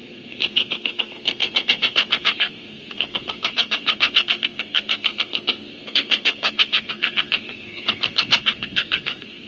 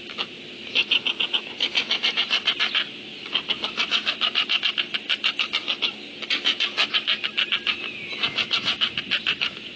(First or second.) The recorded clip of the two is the second